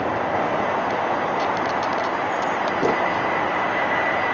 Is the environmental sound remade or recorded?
recorded